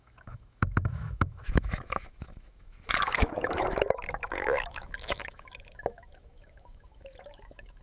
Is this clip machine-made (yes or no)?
yes